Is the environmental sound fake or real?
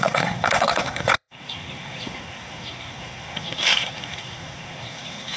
fake